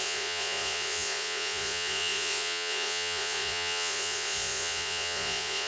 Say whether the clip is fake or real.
fake